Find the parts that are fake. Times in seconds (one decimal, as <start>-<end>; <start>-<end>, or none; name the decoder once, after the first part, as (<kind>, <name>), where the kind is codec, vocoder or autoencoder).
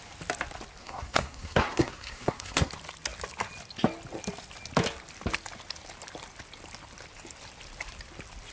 0.8-2.7 (codec, SNAC)